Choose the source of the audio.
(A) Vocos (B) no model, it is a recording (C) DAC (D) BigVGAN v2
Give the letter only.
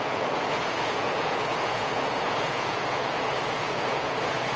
A